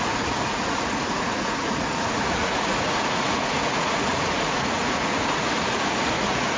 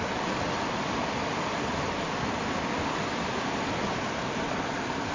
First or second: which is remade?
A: first